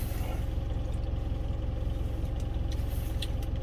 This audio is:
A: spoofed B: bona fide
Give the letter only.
B